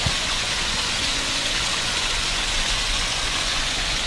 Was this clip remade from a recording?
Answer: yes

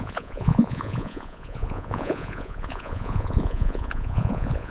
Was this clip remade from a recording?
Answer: yes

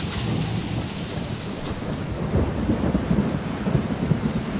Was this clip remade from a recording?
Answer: no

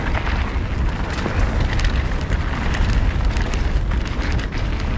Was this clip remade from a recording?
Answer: no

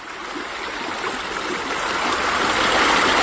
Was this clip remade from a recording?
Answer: no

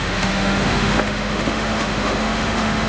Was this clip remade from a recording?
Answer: yes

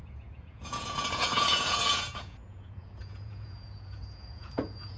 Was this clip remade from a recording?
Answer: yes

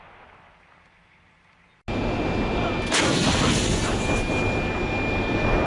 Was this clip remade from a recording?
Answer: no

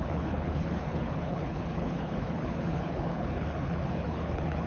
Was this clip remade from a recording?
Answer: yes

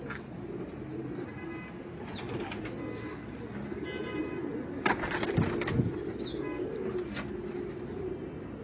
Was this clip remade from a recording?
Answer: no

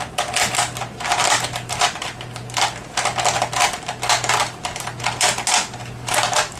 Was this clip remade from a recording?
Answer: no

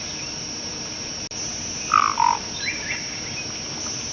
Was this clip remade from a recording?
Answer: no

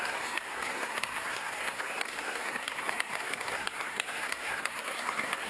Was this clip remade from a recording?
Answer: yes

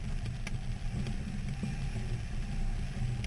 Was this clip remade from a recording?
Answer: no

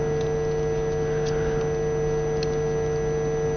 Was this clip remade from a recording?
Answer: no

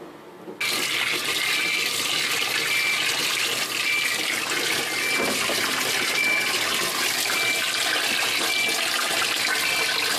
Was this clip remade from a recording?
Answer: no